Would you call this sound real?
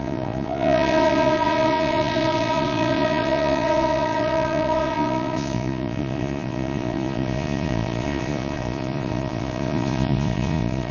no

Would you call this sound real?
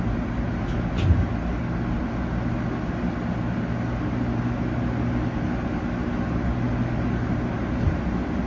yes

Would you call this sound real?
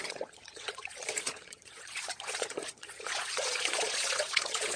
no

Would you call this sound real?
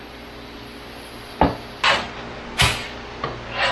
yes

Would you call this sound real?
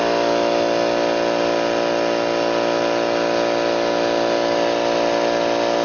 yes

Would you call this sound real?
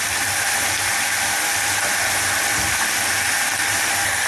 yes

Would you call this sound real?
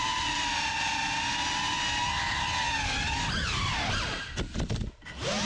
yes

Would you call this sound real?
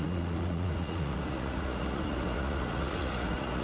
no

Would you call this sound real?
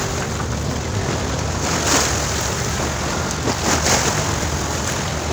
yes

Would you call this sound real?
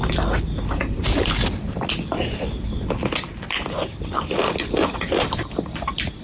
yes